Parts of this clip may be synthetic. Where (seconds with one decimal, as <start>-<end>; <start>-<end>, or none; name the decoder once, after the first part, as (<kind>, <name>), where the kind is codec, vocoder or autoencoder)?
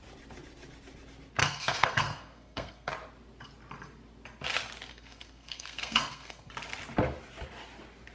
1.4-2.9 (codec, SNAC); 4.9-6.5